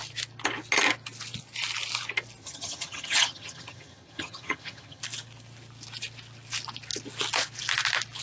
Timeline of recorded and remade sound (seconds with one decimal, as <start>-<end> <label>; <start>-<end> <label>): 0.0-2.4 recorded; 2.4-5.0 remade; 5.0-8.2 recorded